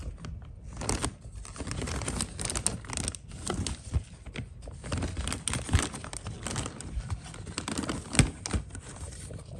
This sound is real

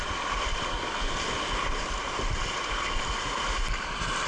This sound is real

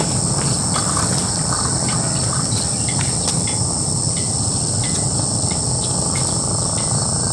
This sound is fake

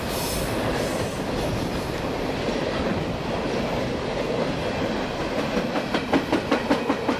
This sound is real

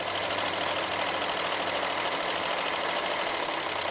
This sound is real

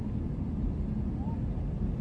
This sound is real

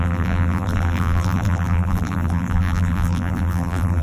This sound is fake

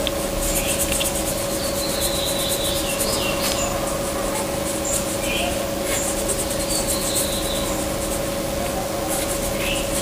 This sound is real